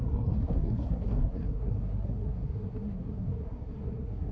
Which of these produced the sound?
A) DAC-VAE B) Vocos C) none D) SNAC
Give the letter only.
D